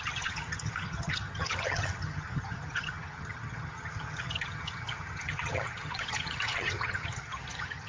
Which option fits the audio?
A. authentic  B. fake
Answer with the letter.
B